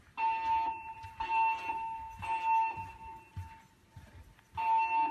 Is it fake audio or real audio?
real